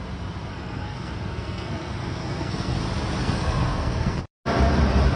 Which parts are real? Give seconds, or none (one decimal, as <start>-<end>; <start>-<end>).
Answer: 0.0-0.5; 2.8-3.2; 4.2-5.2